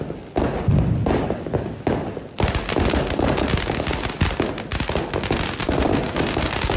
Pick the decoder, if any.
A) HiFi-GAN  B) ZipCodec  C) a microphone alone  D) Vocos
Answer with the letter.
C